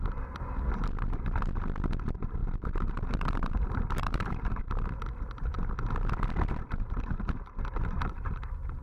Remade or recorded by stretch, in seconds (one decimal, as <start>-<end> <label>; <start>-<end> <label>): 0.0-2.4 recorded; 2.4-4.6 remade; 4.6-8.8 recorded